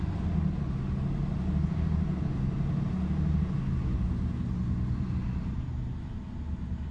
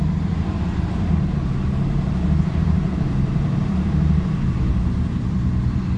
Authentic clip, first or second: first